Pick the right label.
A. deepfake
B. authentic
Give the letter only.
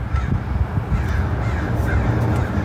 B